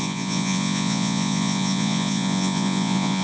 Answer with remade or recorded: remade